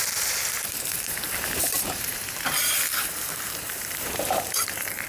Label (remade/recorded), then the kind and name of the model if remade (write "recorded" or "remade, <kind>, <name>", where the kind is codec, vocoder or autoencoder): remade, vocoder, BigVGAN v2